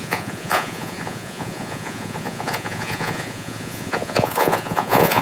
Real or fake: fake